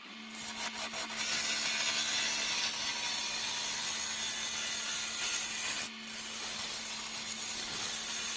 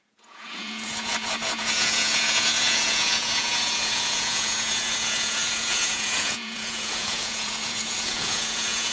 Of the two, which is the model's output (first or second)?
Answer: second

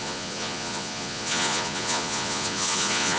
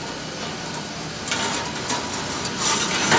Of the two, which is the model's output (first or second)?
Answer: first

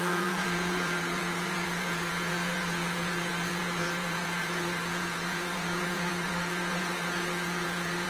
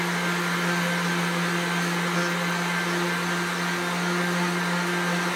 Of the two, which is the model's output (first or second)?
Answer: first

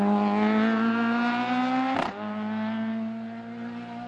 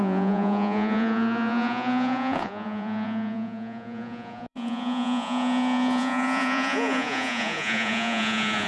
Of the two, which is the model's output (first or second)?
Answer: second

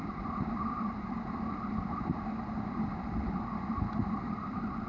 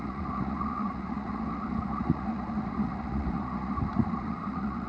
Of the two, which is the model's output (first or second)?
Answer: second